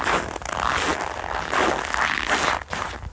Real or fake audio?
real